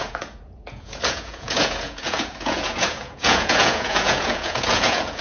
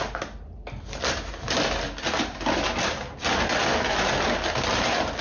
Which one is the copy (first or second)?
first